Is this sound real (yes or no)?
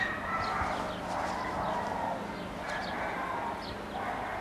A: yes